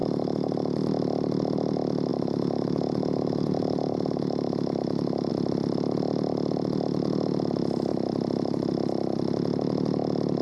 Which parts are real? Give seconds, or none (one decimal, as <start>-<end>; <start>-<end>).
0.7-2.1; 5.3-10.4